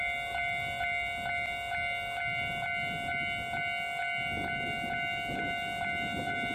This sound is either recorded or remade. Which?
recorded